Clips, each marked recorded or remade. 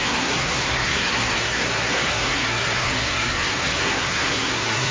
remade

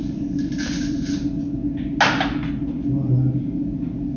recorded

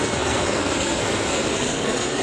remade